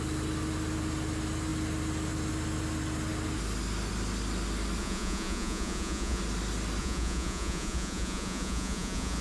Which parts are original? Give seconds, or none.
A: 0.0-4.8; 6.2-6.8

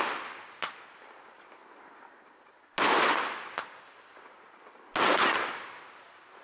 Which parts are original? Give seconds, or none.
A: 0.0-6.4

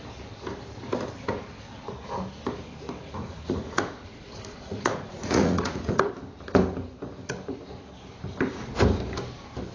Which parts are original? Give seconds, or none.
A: 0.0-3.2; 6.1-9.7

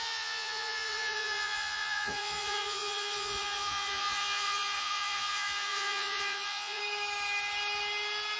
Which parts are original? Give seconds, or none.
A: 6.8-8.4

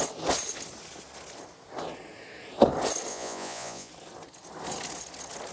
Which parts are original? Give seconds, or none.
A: 0.0-3.1; 3.9-5.5